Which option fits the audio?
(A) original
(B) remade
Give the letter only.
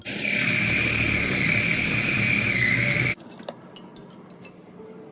A